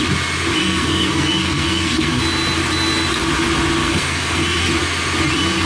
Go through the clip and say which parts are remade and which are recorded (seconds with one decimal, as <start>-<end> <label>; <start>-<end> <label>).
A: 0.0-0.6 recorded; 0.6-2.2 remade; 2.2-3.8 recorded; 3.8-4.6 remade; 4.6-5.7 recorded